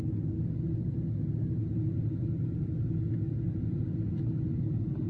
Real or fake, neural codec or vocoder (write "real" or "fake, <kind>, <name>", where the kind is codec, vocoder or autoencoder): real